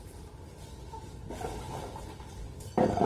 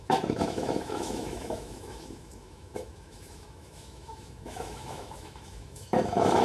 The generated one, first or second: second